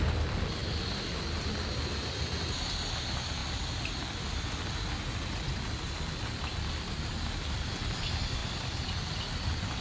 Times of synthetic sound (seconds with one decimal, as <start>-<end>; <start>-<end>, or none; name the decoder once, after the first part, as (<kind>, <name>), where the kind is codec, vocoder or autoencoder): none